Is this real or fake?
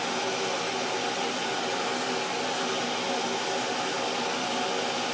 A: real